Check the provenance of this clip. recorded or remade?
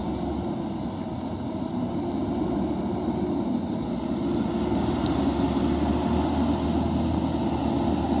recorded